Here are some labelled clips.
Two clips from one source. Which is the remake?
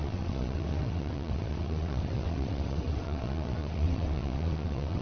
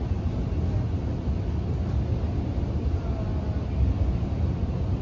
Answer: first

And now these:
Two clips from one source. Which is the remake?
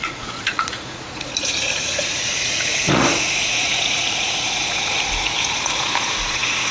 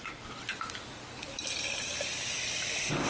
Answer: first